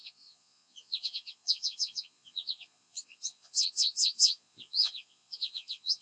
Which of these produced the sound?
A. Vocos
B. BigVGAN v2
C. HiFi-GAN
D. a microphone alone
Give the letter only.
A